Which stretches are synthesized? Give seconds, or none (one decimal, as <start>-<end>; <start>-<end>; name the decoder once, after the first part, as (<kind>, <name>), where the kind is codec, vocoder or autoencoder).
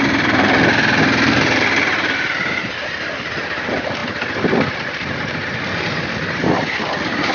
none